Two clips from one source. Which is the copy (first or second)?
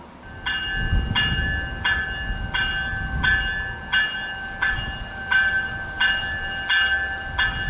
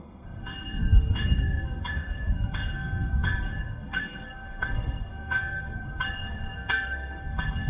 second